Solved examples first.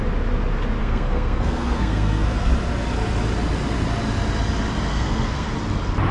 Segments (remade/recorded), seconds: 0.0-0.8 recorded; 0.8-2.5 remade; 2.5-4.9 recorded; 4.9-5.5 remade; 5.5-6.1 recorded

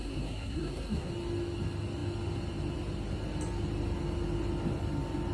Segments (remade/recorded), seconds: 0.0-1.1 remade; 1.1-5.3 recorded

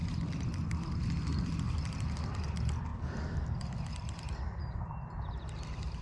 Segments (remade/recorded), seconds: 0.0-6.0 recorded

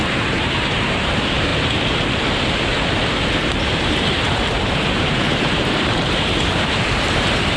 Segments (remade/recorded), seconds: 0.0-1.5 remade; 1.5-3.6 recorded; 3.6-7.6 remade

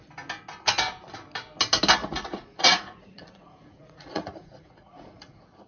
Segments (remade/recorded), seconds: 0.0-2.0 recorded; 2.0-5.7 remade

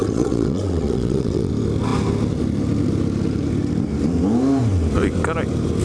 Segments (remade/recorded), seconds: 0.0-1.5 remade; 1.5-5.8 recorded

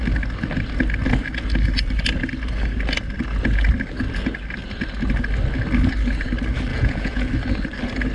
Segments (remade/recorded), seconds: 0.0-6.7 recorded; 6.7-7.3 remade; 7.3-8.1 recorded

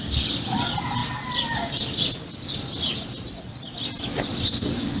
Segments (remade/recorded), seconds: 0.0-5.0 recorded